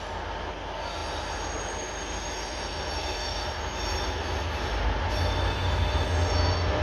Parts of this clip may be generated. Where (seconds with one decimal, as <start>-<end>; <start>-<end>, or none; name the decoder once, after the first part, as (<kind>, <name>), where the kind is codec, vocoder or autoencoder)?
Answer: none